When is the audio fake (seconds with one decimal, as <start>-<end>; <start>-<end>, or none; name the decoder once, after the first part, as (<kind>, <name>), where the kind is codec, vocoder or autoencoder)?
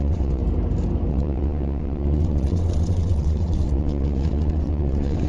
0.0-0.4 (vocoder, WaveNeXt); 1.1-5.3